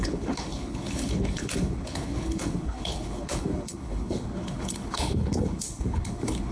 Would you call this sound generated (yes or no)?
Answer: yes